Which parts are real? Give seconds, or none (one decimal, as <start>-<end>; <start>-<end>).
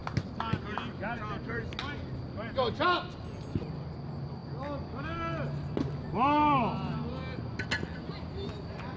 0.0-9.0